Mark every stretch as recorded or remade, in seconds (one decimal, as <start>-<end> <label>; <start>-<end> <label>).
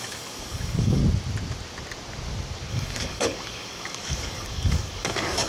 0.0-1.0 remade; 1.0-2.7 recorded; 2.7-5.5 remade